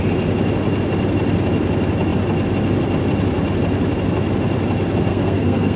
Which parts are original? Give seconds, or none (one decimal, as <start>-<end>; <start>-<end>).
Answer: 0.0-5.1